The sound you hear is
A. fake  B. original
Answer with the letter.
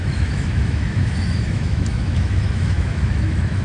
A